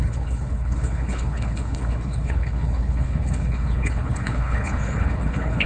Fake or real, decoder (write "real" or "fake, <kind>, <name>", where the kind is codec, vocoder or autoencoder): fake, codec, HILCodec